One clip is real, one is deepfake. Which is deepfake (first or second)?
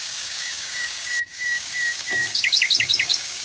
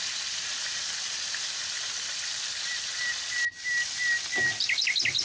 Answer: first